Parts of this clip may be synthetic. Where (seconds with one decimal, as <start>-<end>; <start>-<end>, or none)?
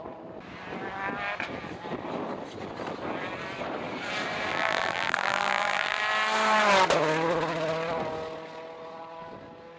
4.5-6.0